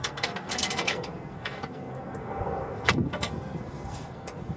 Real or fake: fake